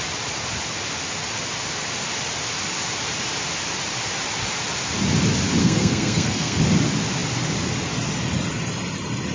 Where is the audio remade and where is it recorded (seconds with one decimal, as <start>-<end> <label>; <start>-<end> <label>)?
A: 0.0-5.6 recorded; 5.6-6.6 remade; 6.6-9.3 recorded